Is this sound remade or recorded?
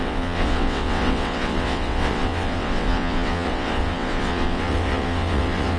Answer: remade